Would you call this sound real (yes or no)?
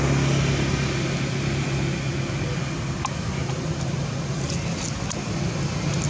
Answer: yes